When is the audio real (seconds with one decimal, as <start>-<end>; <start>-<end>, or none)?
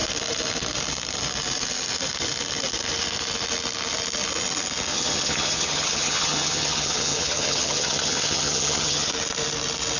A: 0.0-4.9; 9.1-10.0